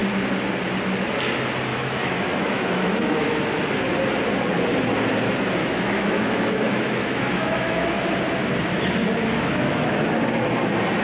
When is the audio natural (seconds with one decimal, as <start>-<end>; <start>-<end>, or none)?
0.0-1.7; 3.4-5.6; 8.1-9.0; 10.1-11.0